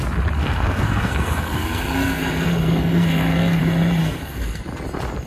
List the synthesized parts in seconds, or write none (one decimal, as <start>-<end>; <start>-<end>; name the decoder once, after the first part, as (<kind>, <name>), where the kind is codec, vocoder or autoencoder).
0.4-3.6 (codec, SNAC); 4.0-4.6